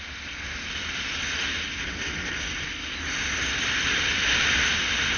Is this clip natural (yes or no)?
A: yes